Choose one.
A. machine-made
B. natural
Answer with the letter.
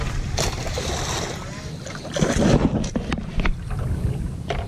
B